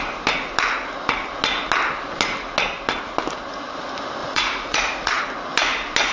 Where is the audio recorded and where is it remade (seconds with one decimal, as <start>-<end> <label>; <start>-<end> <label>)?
0.0-4.2 recorded; 4.2-5.2 remade; 5.2-6.1 recorded